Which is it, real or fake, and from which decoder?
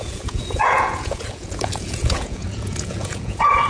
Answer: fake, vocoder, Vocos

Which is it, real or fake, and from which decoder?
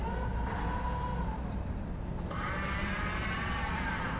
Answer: real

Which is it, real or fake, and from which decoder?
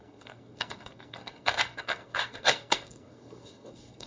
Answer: fake, codec, SNAC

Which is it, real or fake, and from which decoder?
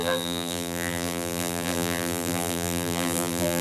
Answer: fake, vocoder, BigVGAN v2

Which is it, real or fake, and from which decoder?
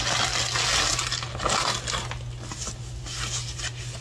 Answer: real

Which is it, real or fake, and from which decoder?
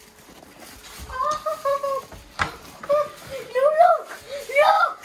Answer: real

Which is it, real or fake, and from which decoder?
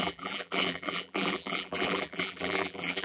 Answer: fake, vocoder, BigVGAN v2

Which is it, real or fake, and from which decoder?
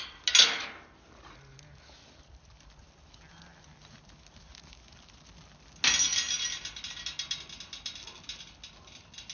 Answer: real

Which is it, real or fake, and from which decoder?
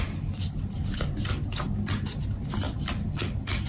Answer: real